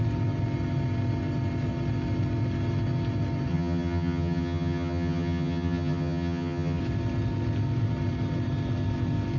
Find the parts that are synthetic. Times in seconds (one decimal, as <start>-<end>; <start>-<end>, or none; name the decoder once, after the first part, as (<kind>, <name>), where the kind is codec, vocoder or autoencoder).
3.5-6.8 (vocoder, HiFi-GAN)